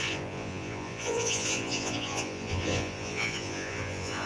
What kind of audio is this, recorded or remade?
remade